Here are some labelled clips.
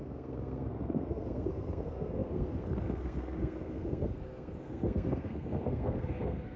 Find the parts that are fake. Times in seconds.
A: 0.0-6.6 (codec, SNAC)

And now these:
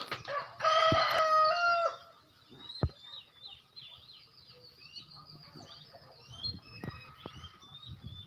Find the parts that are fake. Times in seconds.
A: none

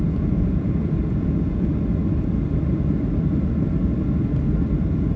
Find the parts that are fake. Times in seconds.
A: 0.0-1.7 (vocoder, Vocos); 4.8-5.2

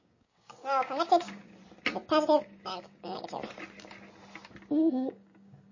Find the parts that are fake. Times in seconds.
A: 0.0-1.6 (codec, DAC); 2.4-3.4; 4.9-5.7

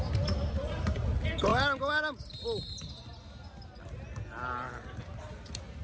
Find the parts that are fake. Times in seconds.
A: none

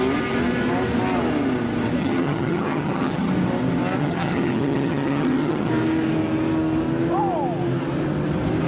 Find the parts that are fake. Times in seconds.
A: 2.0-3.3 (vocoder, HiFi-GAN); 4.0-5.7

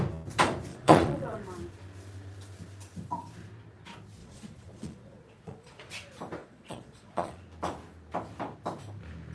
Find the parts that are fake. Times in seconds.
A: 0.7-1.4 (vocoder, Vocos); 4.2-5.9; 6.4-7.4

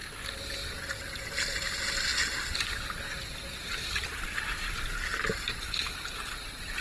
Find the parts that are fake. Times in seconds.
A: none